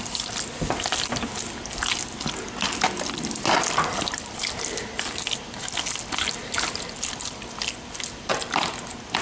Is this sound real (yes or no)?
yes